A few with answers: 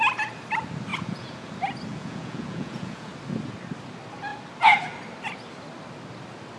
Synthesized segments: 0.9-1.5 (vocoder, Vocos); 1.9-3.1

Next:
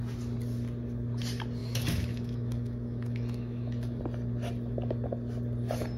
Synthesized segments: 1.6-4.0 (autoencoder, DAC-VAE)

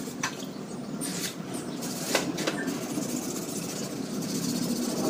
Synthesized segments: 1.1-2.3 (vocoder, BigVGAN v2)